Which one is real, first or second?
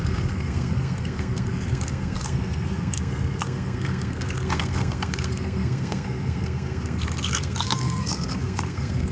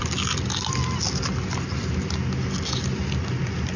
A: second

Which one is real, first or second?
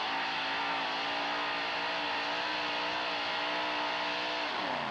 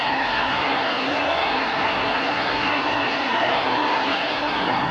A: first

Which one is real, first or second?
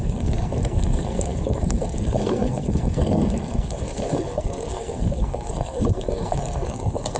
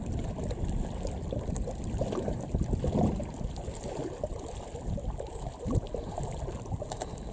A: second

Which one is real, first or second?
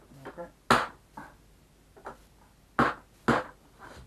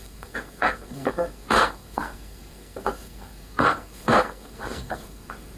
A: first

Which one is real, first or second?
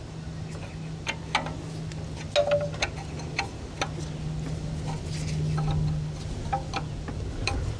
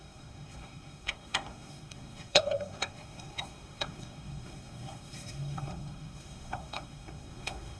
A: first